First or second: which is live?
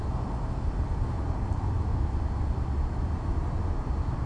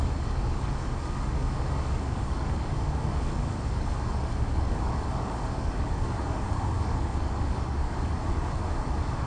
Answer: first